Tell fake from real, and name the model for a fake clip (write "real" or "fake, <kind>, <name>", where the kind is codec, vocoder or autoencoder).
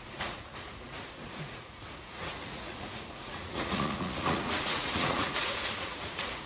fake, vocoder, Vocos